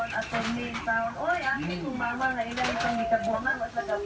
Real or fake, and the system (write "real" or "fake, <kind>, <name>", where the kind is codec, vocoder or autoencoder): real